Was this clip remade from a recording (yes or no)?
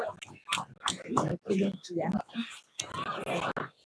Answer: no